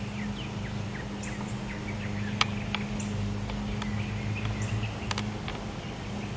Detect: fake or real real